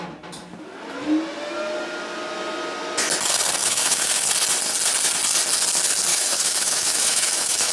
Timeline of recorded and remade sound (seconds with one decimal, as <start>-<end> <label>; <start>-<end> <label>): 0.0-3.6 recorded; 3.6-4.3 remade; 4.3-6.1 recorded; 6.1-7.7 remade